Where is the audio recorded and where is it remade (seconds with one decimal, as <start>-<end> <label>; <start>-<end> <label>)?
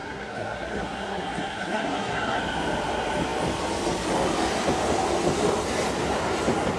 0.0-2.4 remade; 2.4-6.8 recorded